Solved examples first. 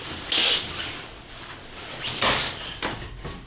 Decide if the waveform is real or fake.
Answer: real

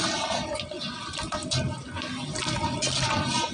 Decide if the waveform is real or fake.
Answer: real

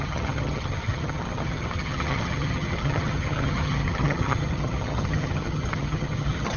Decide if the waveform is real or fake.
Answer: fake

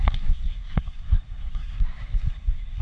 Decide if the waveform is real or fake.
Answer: fake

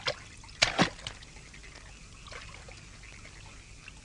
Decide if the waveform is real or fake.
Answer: real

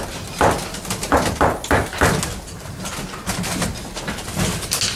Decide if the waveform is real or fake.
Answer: real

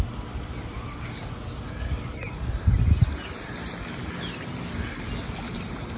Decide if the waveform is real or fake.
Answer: real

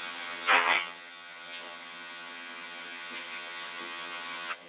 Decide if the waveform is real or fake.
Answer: fake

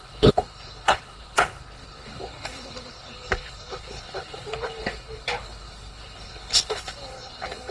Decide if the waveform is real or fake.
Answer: fake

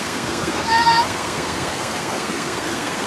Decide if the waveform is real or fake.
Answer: fake